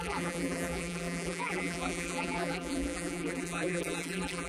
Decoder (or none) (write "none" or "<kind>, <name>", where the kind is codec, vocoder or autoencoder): vocoder, BigVGAN v2